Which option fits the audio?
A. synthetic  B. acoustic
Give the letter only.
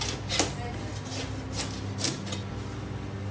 B